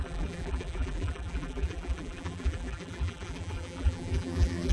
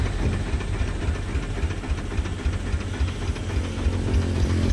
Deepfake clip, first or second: first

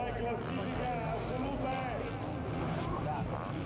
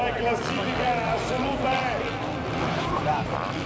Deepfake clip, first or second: second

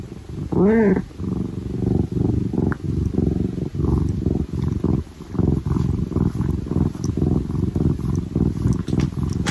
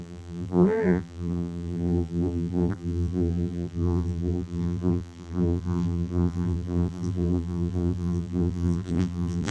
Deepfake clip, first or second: second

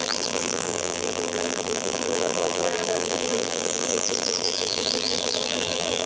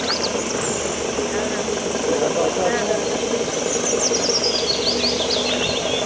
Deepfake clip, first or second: first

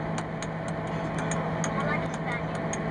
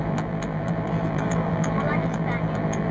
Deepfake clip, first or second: second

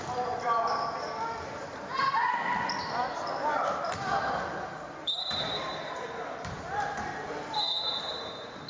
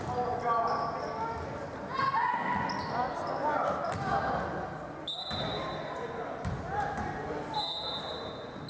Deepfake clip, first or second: first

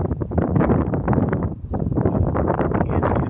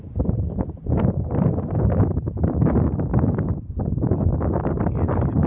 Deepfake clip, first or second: first